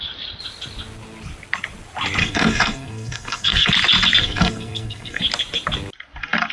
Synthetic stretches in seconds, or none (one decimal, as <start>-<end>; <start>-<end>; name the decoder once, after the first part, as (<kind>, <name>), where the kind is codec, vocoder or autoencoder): 2.2-3.7 (codec, SNAC); 4.2-5.2